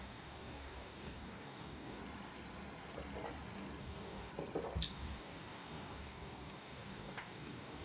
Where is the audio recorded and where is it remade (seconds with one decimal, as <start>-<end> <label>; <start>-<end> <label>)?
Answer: 0.0-2.0 remade; 2.0-3.8 recorded; 3.8-4.3 remade; 4.3-4.9 recorded; 4.9-7.8 remade